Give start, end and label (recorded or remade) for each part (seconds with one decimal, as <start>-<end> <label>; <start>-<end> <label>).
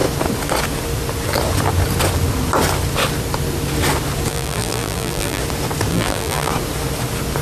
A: 0.0-4.3 recorded; 4.3-5.4 remade; 5.4-5.9 recorded; 5.9-6.5 remade; 6.5-7.4 recorded